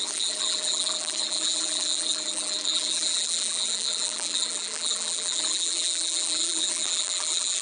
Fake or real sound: fake